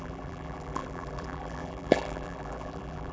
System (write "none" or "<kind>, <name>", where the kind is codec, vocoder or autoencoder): vocoder, BigVGAN v2